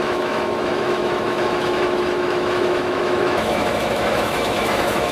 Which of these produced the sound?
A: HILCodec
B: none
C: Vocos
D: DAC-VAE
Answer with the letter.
D